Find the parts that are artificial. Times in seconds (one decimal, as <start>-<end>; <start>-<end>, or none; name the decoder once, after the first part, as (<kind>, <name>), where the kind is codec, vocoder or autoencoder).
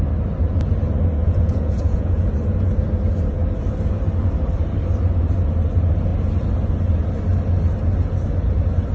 1.2-2.3 (vocoder, Vocos)